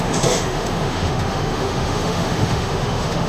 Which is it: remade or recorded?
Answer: remade